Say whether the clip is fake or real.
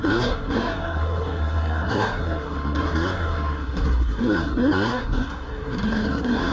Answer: fake